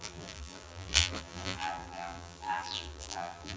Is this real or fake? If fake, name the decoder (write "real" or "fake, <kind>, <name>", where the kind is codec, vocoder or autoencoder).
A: fake, vocoder, BigVGAN v2